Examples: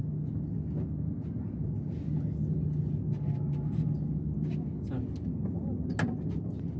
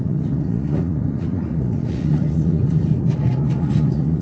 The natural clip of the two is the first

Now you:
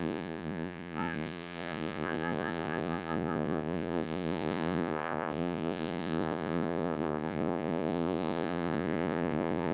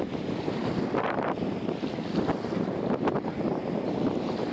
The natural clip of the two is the second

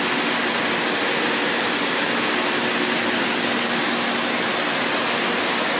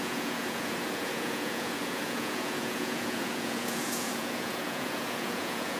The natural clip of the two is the first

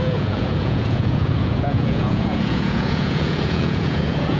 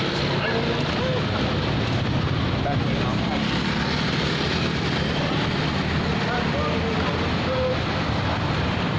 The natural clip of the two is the second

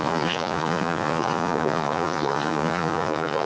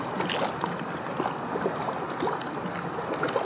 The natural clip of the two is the second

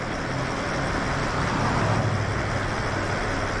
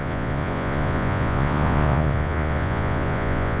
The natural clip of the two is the first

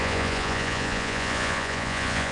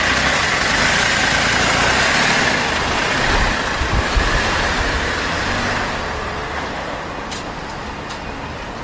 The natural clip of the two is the second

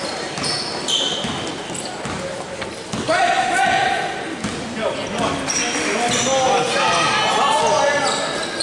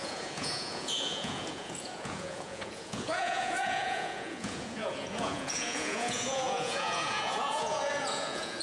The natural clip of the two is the first